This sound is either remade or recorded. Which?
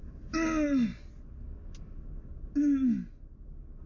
recorded